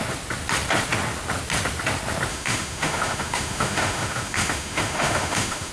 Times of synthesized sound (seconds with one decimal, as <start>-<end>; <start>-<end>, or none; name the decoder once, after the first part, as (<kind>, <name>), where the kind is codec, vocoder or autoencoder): 2.3-5.7 (autoencoder, DAC-VAE)